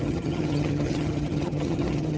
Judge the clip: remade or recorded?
remade